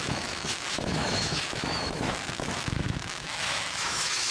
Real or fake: fake